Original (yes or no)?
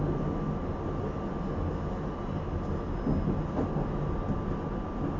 yes